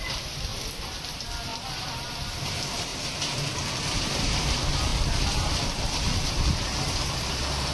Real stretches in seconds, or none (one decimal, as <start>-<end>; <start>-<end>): 0.5-1.1; 1.5-2.2; 2.9-4.2; 4.9-5.9